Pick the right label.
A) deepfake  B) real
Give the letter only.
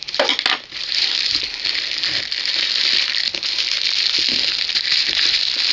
B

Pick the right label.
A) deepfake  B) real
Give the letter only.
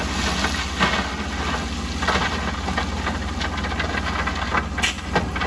B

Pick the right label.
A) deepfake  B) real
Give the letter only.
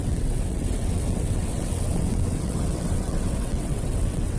A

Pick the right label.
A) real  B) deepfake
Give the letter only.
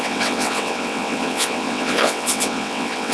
B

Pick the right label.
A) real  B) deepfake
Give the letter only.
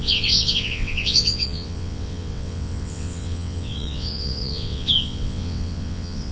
B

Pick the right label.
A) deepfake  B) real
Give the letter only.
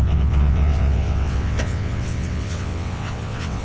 A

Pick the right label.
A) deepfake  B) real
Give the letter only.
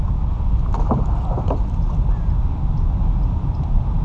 B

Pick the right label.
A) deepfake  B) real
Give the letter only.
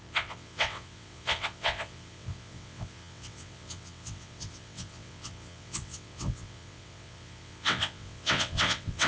A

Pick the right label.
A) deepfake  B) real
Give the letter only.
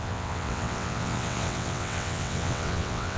A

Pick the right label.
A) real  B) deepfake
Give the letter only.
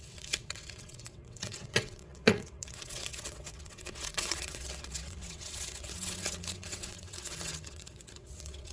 B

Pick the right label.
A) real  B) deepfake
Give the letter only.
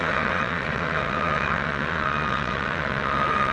B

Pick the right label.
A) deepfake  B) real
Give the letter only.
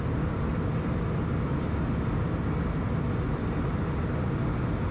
B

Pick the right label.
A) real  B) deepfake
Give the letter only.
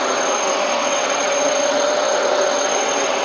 B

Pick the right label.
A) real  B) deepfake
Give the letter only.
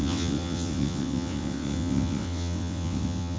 B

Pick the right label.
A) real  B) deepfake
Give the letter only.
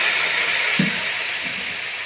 A